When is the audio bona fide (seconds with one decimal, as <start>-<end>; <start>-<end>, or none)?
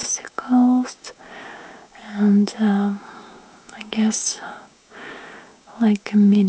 none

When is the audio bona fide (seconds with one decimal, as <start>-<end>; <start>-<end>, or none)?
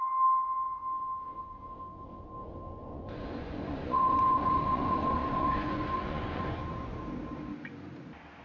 0.0-2.8; 7.0-8.4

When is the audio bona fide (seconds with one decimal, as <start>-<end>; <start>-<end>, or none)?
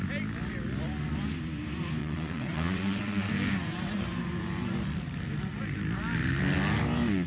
0.0-2.0; 3.3-7.3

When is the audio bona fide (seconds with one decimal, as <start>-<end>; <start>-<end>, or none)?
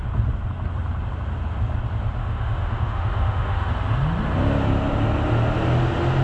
0.0-2.2; 3.7-6.2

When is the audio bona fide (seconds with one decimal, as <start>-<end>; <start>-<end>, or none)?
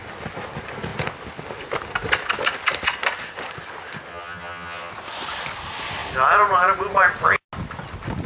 0.0-4.1; 4.9-8.3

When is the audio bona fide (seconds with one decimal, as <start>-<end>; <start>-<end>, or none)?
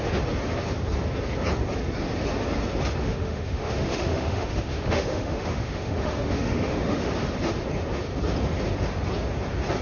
0.0-3.0; 7.1-9.8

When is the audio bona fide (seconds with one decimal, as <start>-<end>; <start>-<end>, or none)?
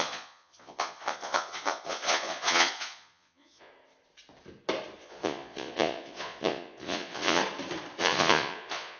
3.7-5.0; 7.4-8.0